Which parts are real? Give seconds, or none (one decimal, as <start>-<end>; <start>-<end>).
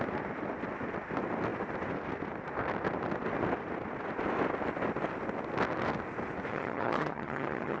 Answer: 0.0-6.5